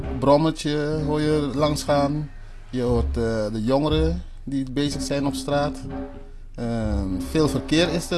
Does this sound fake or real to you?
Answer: real